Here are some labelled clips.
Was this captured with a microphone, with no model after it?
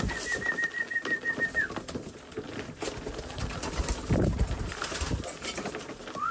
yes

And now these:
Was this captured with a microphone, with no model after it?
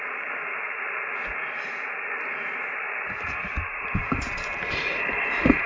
no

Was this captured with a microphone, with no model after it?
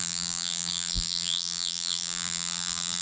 no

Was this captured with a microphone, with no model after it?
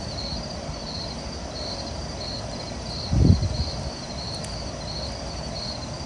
yes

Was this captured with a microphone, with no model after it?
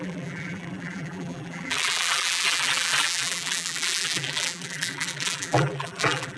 no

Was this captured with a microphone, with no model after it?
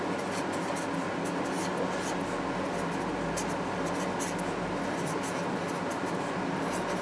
yes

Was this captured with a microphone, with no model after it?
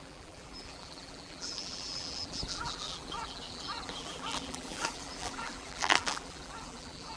no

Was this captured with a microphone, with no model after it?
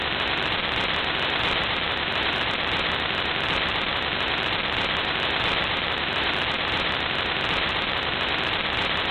no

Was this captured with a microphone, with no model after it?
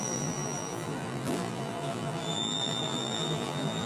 no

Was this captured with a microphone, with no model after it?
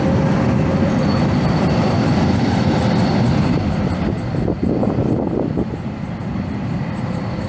no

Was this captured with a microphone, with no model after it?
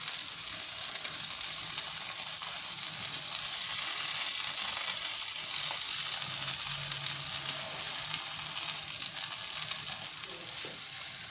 yes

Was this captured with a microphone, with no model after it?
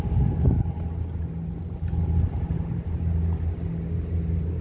yes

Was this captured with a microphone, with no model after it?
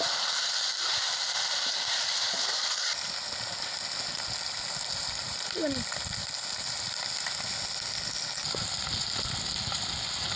yes